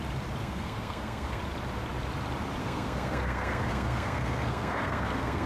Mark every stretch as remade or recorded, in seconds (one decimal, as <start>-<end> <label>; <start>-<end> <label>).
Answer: 0.0-0.4 recorded; 0.4-1.4 remade; 1.4-2.6 recorded; 2.6-5.5 remade